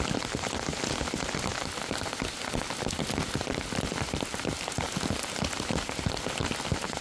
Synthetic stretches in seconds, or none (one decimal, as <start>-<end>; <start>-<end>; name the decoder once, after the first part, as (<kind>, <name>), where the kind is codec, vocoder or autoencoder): none